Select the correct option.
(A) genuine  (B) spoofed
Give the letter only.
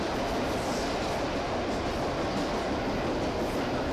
A